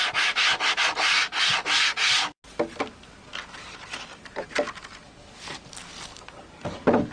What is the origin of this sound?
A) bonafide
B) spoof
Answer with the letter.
A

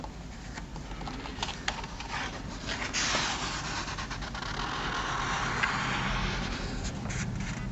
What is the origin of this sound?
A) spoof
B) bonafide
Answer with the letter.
B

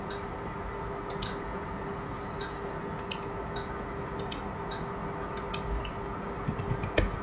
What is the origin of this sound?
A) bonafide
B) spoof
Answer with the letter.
A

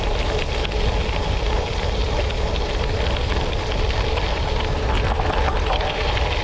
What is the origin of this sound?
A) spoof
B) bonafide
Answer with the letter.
B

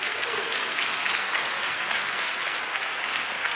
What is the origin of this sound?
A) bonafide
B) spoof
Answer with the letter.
B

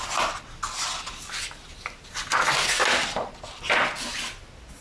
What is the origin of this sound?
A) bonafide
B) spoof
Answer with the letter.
A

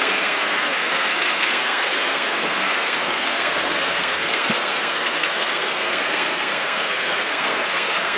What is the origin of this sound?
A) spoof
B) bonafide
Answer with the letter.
A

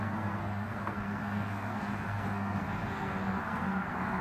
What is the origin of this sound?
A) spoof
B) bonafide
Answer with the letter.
A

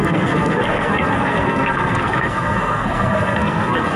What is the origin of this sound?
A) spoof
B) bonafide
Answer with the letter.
A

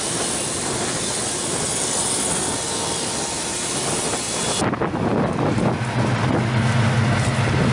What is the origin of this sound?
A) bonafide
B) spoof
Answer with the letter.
A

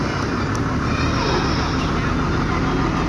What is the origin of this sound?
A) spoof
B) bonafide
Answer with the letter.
B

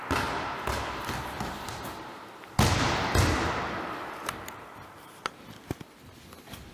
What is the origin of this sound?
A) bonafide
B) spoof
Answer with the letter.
A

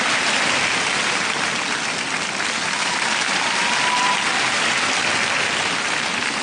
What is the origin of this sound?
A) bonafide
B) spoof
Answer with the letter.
A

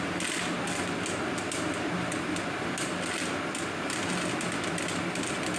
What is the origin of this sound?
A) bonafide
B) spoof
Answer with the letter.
A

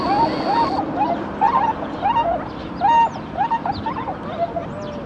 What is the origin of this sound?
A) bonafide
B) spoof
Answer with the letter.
A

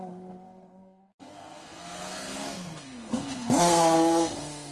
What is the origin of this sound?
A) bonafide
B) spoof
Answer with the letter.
B